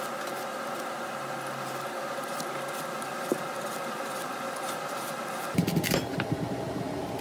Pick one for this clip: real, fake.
real